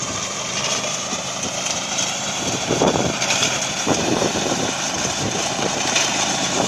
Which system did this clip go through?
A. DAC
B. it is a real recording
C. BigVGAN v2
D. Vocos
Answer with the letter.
C